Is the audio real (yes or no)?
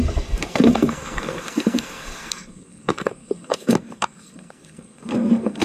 no